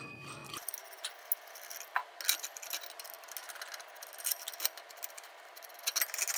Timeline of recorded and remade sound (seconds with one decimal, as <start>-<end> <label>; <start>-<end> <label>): 0.0-6.4 recorded